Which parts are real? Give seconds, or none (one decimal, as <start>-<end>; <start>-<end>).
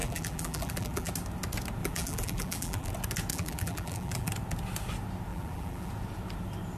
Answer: 1.1-1.8; 2.9-3.3; 4.3-5.3; 5.9-6.8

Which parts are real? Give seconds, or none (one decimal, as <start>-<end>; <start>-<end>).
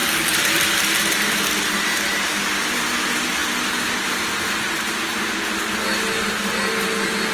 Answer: 2.0-7.3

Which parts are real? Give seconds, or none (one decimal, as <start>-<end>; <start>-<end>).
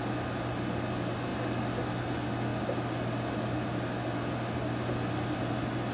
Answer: 0.0-5.9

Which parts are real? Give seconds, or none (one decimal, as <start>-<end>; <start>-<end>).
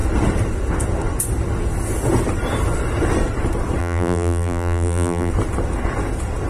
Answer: 0.0-3.8; 5.3-6.5